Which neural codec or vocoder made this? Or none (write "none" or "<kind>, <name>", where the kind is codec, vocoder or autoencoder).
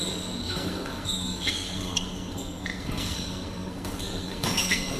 codec, SNAC